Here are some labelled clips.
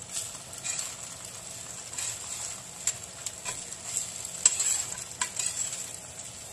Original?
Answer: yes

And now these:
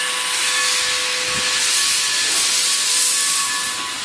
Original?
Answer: yes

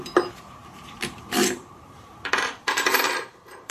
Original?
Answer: no